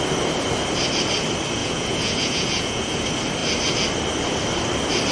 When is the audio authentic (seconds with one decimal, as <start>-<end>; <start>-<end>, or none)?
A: 0.0-1.6; 3.0-5.1